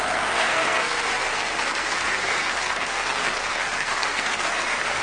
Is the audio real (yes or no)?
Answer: no